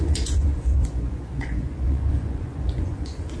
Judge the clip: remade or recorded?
remade